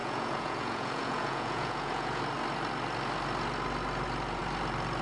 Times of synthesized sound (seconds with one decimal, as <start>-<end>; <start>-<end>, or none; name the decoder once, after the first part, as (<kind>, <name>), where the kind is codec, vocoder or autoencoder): 0.0-2.2 (vocoder, Vocos)